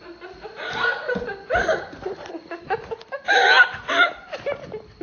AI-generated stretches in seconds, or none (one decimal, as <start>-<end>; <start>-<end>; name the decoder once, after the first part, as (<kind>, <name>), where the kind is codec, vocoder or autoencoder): none